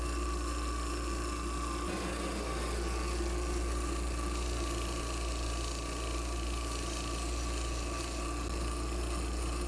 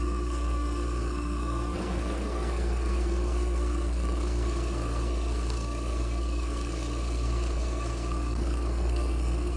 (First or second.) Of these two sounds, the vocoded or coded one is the second